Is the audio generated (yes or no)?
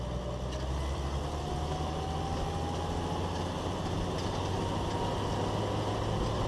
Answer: no